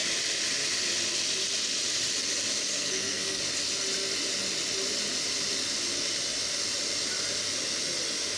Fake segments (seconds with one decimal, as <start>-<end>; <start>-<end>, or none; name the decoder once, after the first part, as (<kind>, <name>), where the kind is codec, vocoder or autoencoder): 2.7-3.4 (codec, SNAC)